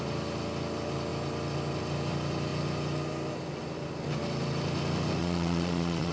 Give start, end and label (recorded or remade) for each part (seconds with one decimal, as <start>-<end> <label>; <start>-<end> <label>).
0.0-5.2 recorded; 5.2-6.1 remade